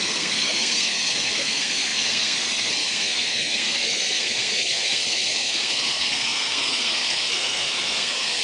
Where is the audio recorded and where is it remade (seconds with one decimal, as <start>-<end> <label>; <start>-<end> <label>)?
0.0-8.4 remade